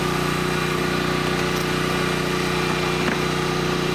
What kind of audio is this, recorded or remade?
recorded